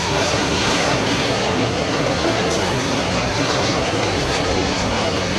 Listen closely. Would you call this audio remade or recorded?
remade